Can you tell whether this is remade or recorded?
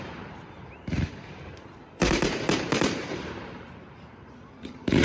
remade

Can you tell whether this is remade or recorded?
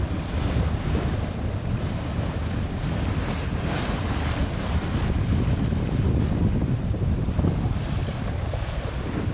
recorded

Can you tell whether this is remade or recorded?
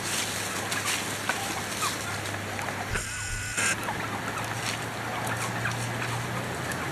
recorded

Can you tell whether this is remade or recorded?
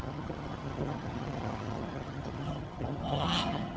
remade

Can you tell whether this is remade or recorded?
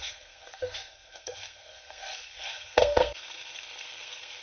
remade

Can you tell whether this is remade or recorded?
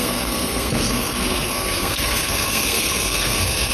remade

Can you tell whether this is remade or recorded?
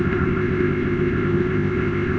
remade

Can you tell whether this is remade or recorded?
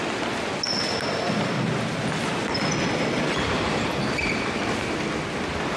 recorded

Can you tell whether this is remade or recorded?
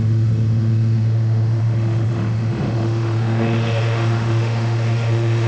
remade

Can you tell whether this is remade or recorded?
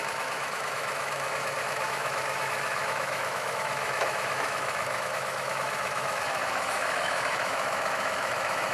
remade